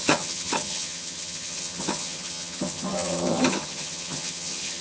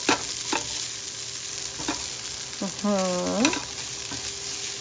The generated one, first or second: first